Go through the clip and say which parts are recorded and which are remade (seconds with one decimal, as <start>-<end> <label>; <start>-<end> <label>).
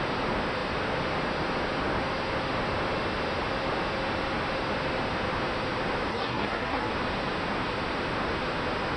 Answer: 0.0-6.1 recorded; 6.1-6.9 remade; 6.9-9.0 recorded